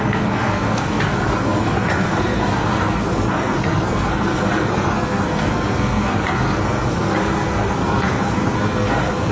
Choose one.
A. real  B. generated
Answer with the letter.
B